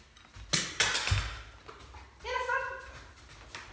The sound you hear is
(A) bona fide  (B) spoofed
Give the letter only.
A